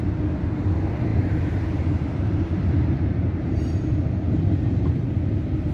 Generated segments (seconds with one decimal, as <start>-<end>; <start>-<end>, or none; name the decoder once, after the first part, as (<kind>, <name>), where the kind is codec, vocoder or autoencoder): 1.1-3.6 (vocoder, BigVGAN v2)